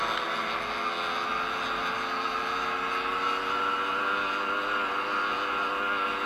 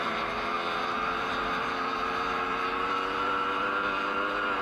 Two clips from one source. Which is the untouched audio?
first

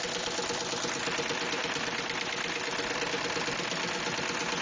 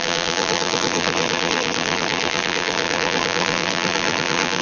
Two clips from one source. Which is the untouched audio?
first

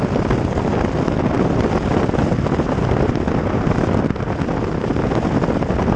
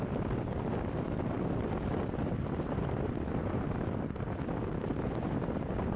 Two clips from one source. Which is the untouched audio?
first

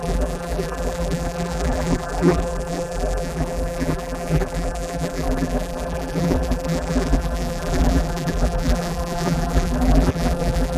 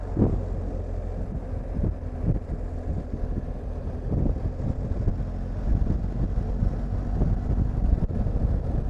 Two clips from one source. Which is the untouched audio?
second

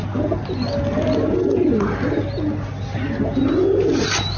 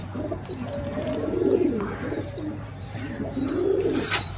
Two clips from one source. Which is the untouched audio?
first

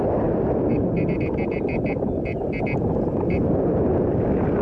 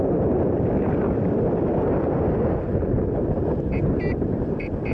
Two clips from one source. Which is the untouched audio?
first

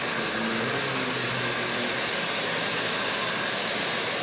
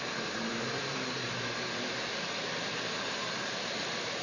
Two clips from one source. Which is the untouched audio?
first